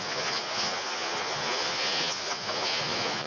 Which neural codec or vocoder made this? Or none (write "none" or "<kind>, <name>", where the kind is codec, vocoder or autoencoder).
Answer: vocoder, Vocos